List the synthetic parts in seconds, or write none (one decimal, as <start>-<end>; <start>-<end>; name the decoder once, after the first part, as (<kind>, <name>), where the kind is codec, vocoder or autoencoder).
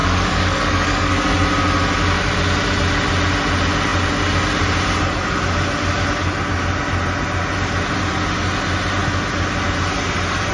0.0-1.1 (codec, DAC)